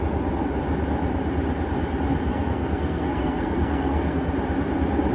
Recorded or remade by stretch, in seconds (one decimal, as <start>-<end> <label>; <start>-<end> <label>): 0.0-2.3 recorded; 2.3-4.3 remade; 4.3-5.1 recorded